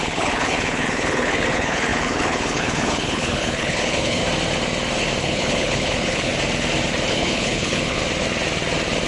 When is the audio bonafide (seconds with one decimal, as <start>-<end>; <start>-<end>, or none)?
4.2-5.2; 6.3-7.1; 8.0-9.1